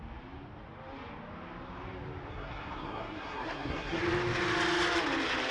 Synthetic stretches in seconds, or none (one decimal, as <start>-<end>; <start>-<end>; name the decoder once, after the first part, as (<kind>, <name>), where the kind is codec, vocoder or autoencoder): 2.3-4.0 (codec, SNAC)